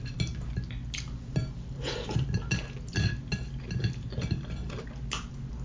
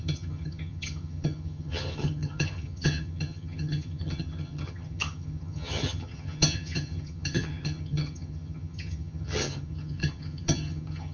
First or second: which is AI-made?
second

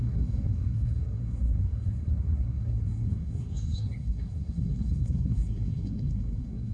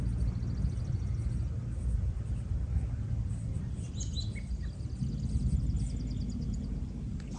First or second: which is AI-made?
first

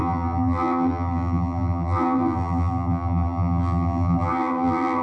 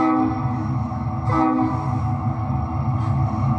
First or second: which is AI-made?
first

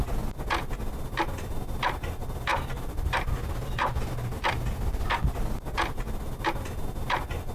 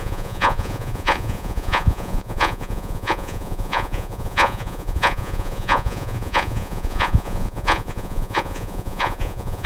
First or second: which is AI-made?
second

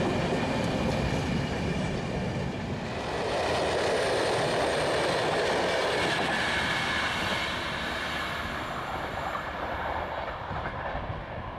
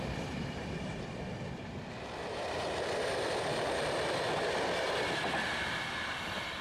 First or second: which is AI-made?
second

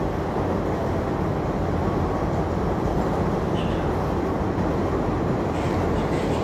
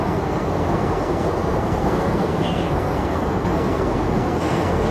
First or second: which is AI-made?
second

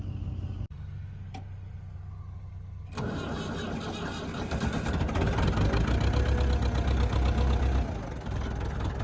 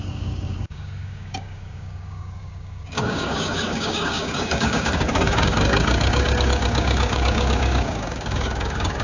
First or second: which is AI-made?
second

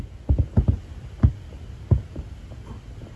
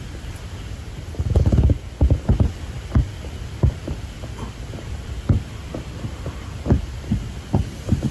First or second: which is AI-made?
second